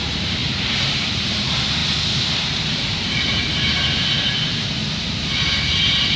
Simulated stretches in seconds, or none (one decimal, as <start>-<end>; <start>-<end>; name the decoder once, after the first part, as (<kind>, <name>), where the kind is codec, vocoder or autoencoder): 0.0-1.8 (vocoder, BigVGAN v2); 2.4-4.1; 5.0-6.2